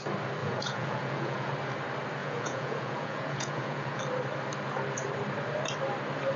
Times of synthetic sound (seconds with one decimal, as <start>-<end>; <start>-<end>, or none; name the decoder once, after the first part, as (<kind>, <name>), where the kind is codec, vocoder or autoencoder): 0.4-1.5 (vocoder, Vocos); 2.2-4.0